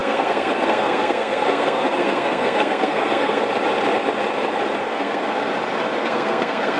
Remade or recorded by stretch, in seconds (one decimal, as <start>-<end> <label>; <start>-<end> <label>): 0.0-3.4 remade; 3.4-4.8 recorded; 4.8-5.5 remade; 5.5-6.0 recorded; 6.0-6.8 remade